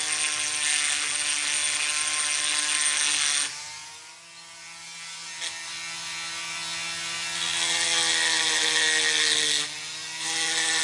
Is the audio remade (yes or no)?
no